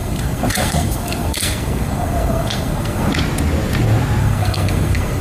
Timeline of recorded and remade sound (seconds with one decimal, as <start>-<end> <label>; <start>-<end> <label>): 0.0-3.1 remade; 3.1-4.2 recorded; 4.2-5.2 remade